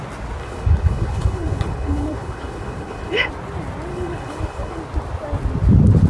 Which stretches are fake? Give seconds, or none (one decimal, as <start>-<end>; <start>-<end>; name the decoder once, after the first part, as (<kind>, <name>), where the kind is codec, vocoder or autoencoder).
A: 0.4-3.3 (codec, HILCodec); 3.9-4.8